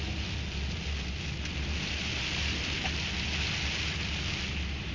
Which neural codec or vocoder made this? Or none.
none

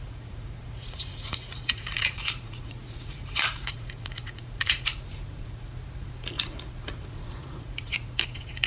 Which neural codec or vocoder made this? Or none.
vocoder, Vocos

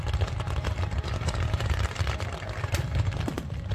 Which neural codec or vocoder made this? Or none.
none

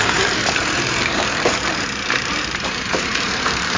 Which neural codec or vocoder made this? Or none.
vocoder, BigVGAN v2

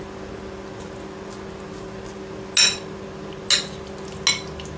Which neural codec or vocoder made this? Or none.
none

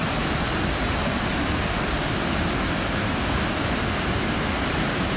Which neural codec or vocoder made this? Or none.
vocoder, BigVGAN v2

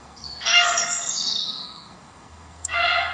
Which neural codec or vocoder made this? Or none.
codec, SNAC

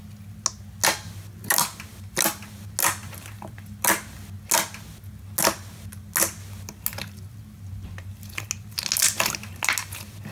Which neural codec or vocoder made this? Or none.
none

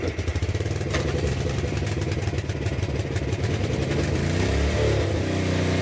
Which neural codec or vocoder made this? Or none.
none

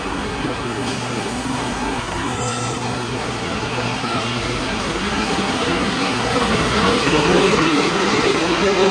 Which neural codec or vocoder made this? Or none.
codec, SNAC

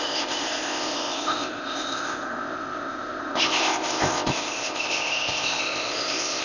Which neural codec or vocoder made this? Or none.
codec, ZipCodec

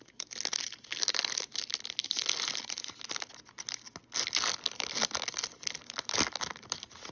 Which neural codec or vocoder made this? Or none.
none